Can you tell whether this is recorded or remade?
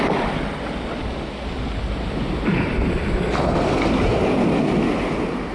recorded